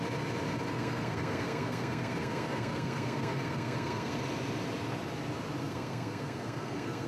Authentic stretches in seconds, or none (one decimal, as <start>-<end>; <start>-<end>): 0.0-0.7; 4.2-5.6